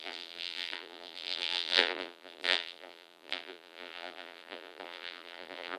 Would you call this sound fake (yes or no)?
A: yes